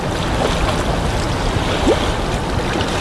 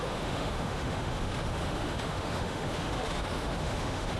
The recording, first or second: first